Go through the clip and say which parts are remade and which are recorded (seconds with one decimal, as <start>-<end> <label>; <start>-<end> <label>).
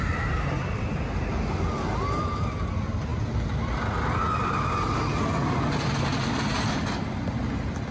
0.0-7.9 recorded